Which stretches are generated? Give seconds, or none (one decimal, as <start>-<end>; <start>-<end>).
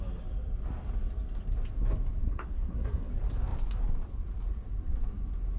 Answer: 2.2-3.1